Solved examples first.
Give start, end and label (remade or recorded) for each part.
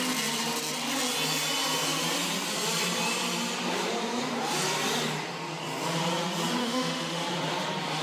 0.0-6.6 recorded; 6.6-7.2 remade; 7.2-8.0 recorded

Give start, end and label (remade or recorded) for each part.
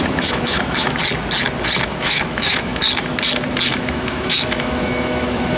0.0-1.0 remade; 1.0-1.9 recorded; 1.9-2.8 remade; 2.8-3.7 recorded; 3.7-5.6 remade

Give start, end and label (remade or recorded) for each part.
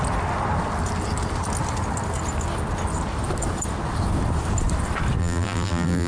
0.0-5.2 recorded; 5.2-6.1 remade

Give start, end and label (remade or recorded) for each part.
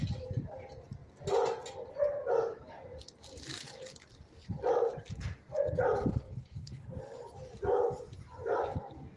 0.0-6.1 recorded; 6.1-7.0 remade; 7.0-9.2 recorded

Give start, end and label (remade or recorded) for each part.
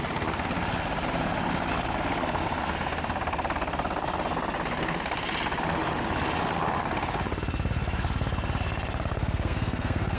0.0-9.1 recorded; 9.1-10.2 remade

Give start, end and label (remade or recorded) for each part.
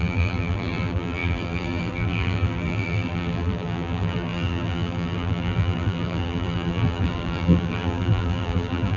0.0-9.0 remade